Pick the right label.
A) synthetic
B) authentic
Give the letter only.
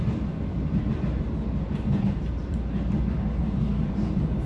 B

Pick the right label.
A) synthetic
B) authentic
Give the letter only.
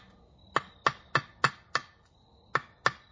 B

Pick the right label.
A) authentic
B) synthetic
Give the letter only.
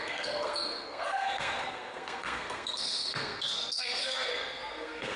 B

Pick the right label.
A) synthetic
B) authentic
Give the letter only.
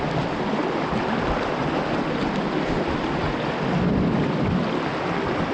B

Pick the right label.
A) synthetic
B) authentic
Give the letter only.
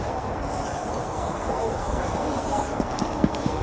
A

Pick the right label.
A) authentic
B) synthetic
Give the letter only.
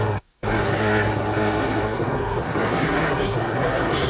B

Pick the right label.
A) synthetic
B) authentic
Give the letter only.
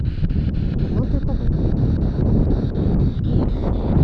B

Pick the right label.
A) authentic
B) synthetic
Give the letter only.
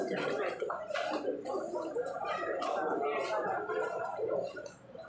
A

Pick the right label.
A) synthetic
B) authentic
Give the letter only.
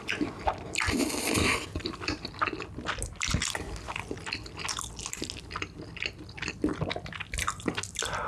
B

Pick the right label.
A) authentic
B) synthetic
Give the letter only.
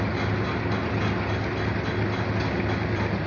A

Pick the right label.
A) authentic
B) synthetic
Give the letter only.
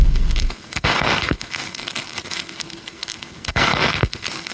B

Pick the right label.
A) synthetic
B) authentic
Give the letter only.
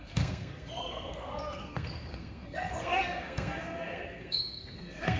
A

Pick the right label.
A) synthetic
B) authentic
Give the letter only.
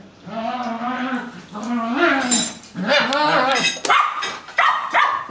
B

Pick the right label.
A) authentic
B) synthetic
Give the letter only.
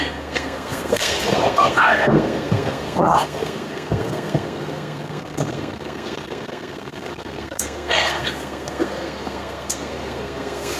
B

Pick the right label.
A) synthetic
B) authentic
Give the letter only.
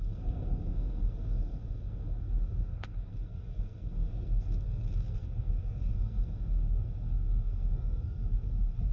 A